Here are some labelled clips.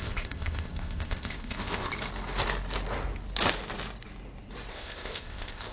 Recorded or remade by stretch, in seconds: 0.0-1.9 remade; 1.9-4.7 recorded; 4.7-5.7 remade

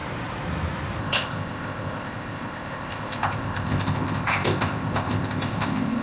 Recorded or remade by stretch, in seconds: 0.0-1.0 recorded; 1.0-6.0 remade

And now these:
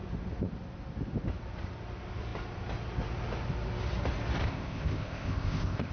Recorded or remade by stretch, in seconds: 0.0-4.4 recorded; 4.4-5.9 remade

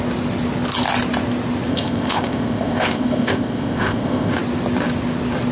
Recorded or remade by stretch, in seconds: 0.0-1.7 recorded; 1.7-4.3 remade; 4.3-5.5 recorded

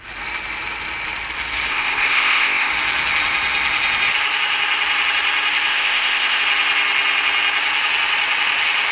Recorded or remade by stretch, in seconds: 0.0-1.7 recorded; 1.7-2.7 remade; 2.7-5.7 recorded; 5.7-6.4 remade; 6.4-8.9 recorded